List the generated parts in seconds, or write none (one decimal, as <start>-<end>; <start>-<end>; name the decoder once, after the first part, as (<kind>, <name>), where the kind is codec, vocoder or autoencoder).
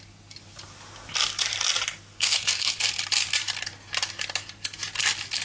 2.1-2.7 (codec, SNAC)